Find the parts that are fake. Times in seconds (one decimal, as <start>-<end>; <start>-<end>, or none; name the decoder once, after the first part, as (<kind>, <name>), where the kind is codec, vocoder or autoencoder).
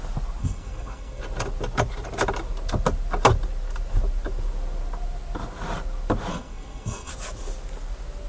0.4-1.2 (codec, SNAC); 6.3-7.1